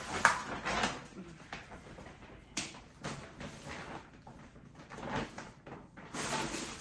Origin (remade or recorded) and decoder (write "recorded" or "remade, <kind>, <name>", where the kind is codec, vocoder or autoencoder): recorded